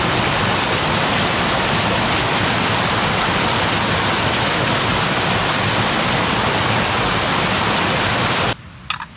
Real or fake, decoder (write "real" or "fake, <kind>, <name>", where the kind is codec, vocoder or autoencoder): real